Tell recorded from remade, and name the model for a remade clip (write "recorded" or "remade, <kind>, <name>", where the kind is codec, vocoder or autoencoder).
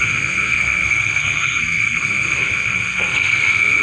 remade, codec, SNAC